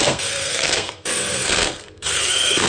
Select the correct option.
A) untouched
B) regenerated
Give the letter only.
B